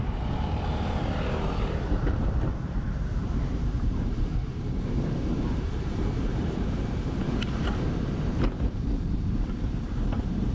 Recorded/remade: remade